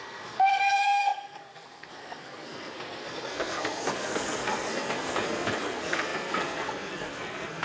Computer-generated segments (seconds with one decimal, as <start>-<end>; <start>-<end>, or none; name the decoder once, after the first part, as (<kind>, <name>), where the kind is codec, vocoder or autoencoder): 0.0-7.6 (codec, SNAC)